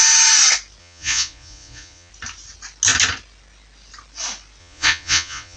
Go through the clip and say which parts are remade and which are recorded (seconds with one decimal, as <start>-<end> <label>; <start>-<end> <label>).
0.0-0.8 recorded; 0.8-2.1 remade; 2.1-4.6 recorded; 4.6-5.6 remade